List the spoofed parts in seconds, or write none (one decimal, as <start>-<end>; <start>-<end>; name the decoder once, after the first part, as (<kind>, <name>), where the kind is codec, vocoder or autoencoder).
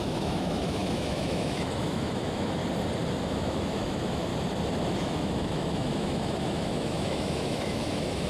0.0-2.6 (autoencoder, DAC-VAE); 3.2-4.3; 4.9-8.3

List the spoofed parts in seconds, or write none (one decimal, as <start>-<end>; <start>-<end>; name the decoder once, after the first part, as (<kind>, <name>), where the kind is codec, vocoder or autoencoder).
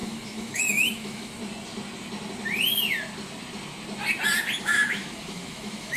0.0-1.4 (autoencoder, DAC-VAE); 4.6-6.0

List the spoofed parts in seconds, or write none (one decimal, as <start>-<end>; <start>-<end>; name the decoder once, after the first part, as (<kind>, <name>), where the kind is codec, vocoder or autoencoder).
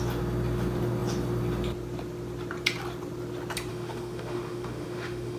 3.7-5.4 (autoencoder, DAC-VAE)